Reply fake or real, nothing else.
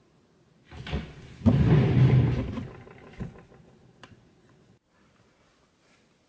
real